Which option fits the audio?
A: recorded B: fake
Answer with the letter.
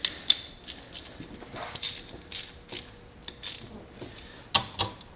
A